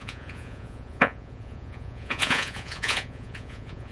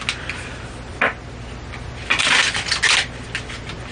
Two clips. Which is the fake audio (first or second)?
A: first